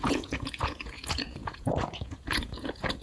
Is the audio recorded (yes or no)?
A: no